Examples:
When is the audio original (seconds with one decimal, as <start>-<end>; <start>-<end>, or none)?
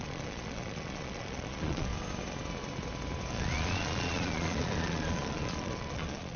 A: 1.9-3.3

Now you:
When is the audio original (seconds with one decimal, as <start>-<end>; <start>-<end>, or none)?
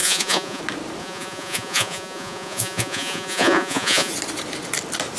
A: 0.6-1.0; 4.1-5.2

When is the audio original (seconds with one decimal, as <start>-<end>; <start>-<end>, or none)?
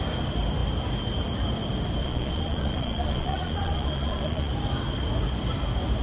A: 0.0-2.0; 4.5-6.0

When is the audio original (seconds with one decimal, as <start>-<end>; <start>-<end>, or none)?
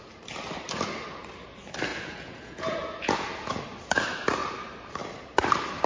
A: 0.0-1.9; 3.6-5.9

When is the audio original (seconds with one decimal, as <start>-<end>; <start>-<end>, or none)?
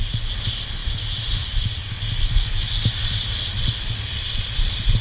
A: 0.0-5.0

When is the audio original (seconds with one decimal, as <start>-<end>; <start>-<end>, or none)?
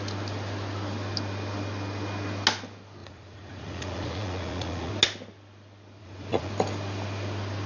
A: 0.0-3.0; 4.9-6.0; 6.5-7.7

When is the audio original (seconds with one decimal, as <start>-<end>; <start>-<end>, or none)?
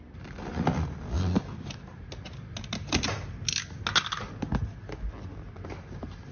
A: 0.0-6.3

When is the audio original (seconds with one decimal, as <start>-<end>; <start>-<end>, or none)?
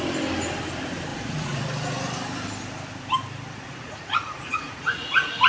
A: 0.0-1.1; 1.6-3.7